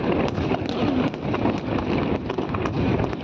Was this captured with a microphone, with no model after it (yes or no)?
yes